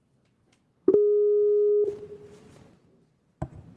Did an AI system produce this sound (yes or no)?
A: no